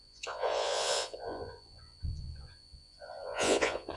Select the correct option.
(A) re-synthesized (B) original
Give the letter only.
A